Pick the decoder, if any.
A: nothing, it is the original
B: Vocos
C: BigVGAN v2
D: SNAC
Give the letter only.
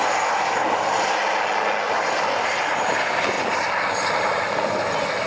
A